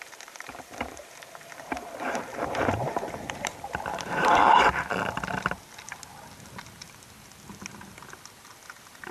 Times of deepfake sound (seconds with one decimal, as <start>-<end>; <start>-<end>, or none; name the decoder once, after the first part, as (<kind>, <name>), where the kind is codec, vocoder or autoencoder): 0.0-4.4 (vocoder, BigVGAN v2)